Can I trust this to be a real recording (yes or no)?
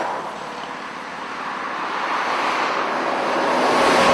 yes